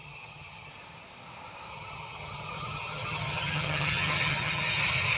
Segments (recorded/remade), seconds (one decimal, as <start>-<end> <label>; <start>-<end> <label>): 0.0-0.7 remade; 0.7-1.7 recorded; 1.7-4.8 remade; 4.8-5.2 recorded